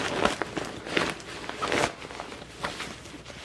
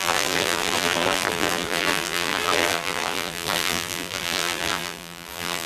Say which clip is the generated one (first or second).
second